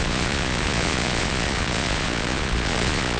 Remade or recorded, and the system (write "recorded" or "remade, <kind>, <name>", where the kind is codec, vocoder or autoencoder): remade, vocoder, Vocos